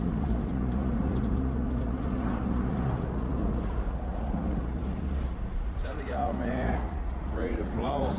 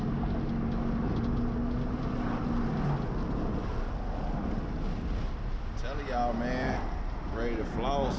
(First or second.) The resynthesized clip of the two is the first